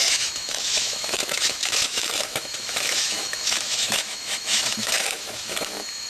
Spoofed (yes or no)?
yes